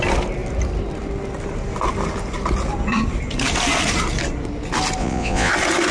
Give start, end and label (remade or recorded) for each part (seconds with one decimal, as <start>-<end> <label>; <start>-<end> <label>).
0.0-5.0 recorded; 5.0-5.5 remade; 5.5-5.9 recorded